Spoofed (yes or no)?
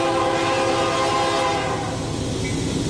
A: no